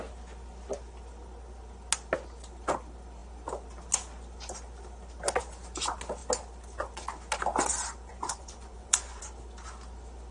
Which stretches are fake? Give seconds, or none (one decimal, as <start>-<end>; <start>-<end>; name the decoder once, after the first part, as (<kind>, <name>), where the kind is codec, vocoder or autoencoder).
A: 8.1-9.2 (vocoder, Vocos)